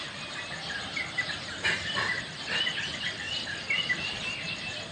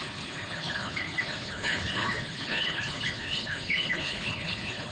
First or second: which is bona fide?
first